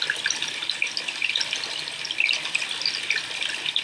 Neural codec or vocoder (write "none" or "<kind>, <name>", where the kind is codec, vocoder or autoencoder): none